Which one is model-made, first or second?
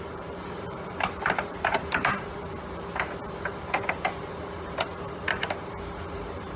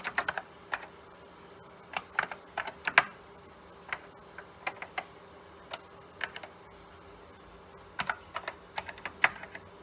first